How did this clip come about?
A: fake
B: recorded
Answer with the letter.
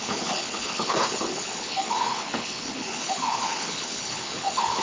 A